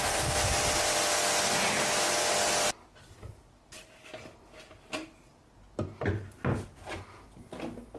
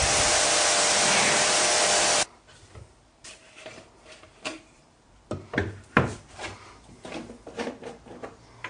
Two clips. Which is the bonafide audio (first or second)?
first